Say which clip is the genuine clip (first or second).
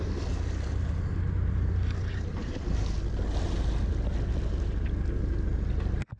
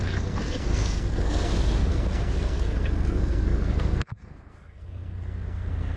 first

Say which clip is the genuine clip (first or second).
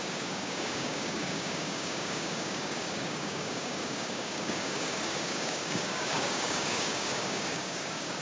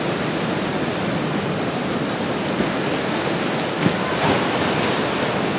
second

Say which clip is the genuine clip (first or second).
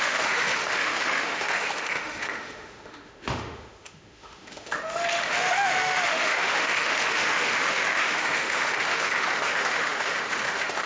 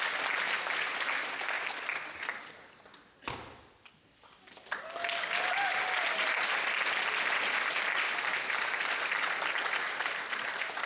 second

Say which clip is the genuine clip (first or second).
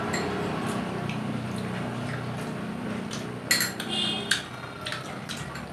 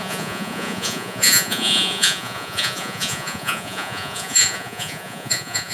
first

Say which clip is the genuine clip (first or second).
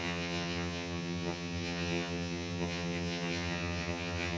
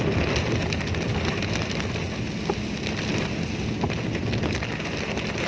second